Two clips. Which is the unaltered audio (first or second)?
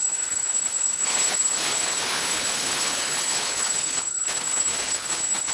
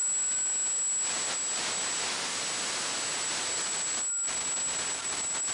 second